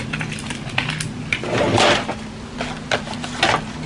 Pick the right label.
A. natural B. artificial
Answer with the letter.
A